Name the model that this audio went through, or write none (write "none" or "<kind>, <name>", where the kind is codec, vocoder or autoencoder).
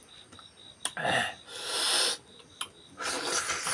none